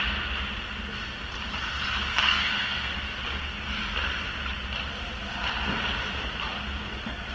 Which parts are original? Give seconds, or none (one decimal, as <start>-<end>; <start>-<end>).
0.0-2.1; 2.9-7.3